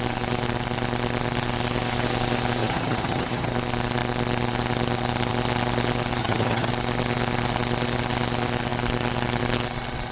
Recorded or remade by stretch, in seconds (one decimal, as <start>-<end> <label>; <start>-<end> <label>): 0.0-2.6 recorded; 2.6-3.5 remade; 3.5-6.2 recorded; 6.2-6.7 remade; 6.7-10.1 recorded

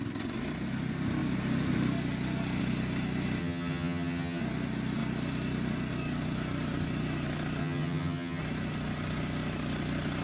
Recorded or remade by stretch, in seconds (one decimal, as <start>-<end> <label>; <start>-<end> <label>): 0.0-3.4 recorded; 3.4-4.4 remade; 4.4-7.6 recorded; 7.6-8.4 remade; 8.4-10.2 recorded

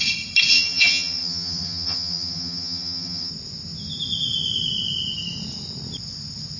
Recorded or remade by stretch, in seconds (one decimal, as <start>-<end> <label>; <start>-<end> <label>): 0.0-0.5 recorded; 0.5-3.3 remade; 3.3-6.6 recorded

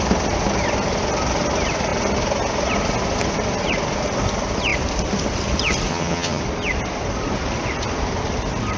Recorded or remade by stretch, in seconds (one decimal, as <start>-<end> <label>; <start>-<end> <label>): 0.0-5.9 recorded; 5.9-6.4 remade; 6.4-8.8 recorded